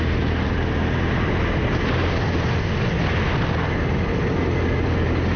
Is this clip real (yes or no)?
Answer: yes